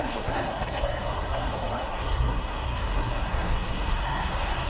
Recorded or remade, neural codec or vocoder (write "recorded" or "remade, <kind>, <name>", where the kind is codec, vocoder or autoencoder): remade, codec, SNAC